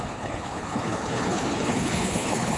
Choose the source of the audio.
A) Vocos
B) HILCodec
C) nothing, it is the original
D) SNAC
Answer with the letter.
B